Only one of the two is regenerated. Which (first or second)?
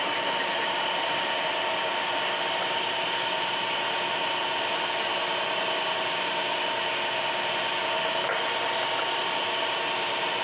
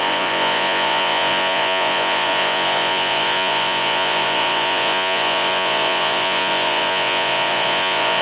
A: second